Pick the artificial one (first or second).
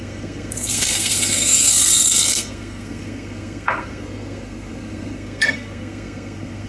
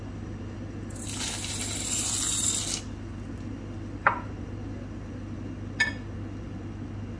first